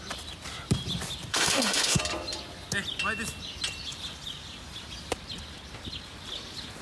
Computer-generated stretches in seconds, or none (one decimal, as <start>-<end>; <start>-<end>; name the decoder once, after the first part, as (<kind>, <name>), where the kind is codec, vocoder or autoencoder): 1.3-2.0 (autoencoder, DAC-VAE)